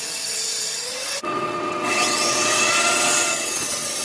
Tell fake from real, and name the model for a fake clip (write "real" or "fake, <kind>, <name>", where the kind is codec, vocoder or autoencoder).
fake, vocoder, WaveNeXt